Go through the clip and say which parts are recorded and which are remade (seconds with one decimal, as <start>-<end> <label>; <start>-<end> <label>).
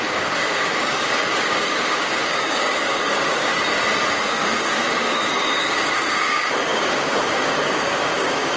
0.0-3.5 remade; 3.5-4.1 recorded; 4.1-8.6 remade